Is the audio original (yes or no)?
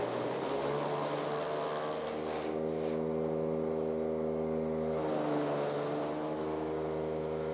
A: yes